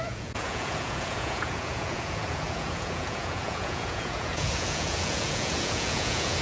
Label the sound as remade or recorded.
remade